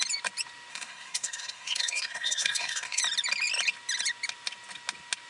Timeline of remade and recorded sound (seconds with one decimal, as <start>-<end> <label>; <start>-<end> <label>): 0.0-0.7 recorded; 0.7-3.0 remade; 3.0-5.3 recorded